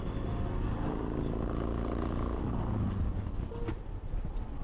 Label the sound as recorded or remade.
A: recorded